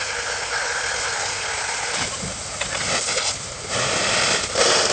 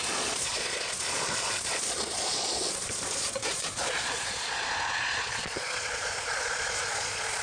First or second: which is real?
first